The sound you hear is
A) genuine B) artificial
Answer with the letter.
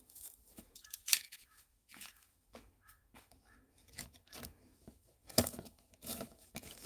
B